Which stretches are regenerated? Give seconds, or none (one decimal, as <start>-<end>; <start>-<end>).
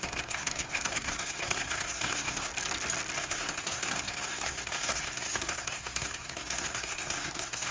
0.0-2.5; 3.2-7.7